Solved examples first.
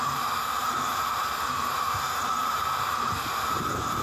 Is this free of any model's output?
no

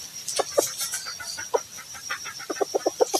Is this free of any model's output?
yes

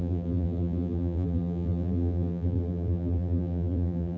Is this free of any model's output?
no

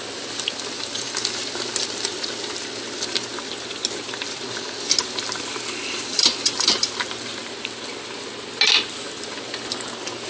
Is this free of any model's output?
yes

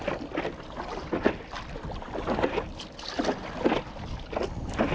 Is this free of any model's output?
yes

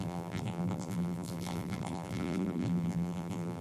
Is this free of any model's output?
no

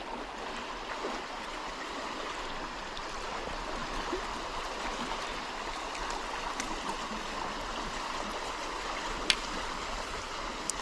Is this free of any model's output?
yes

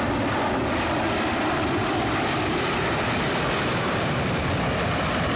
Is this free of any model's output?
no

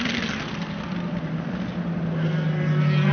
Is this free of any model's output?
yes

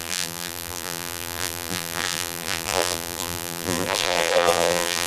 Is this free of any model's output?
no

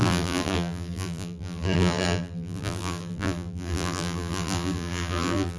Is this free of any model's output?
no